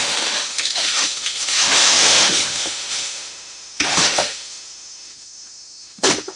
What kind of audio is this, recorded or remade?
remade